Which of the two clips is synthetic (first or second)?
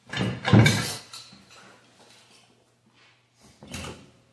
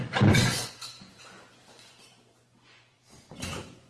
second